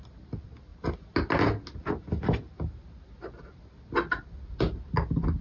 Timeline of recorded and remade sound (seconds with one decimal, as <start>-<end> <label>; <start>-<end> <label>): 0.0-5.4 recorded